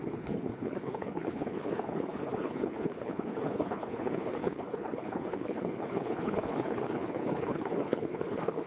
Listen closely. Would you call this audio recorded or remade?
remade